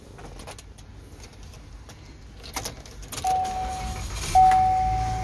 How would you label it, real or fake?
real